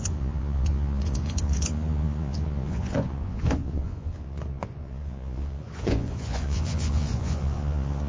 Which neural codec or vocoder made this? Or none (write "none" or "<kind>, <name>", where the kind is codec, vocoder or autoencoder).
vocoder, Vocos